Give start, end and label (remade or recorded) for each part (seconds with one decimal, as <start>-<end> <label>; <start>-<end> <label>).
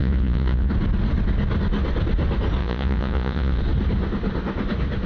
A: 0.0-0.7 remade; 0.7-2.6 recorded; 2.6-3.6 remade; 3.6-5.1 recorded